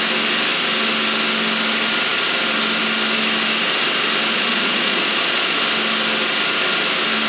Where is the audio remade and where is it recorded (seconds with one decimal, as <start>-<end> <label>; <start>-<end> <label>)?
0.0-4.3 recorded; 4.3-5.6 remade; 5.6-7.3 recorded